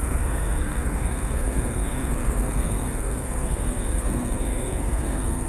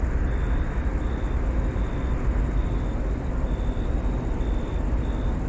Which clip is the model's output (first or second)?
first